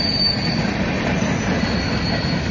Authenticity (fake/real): real